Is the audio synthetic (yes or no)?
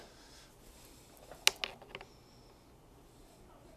no